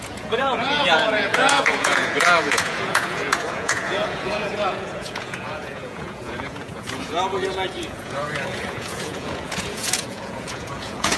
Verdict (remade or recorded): remade